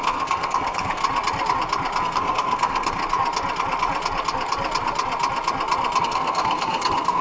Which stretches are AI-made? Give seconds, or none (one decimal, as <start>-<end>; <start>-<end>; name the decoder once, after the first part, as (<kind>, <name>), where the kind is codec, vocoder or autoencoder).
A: 0.0-1.0 (codec, SNAC); 2.0-3.0; 6.0-7.2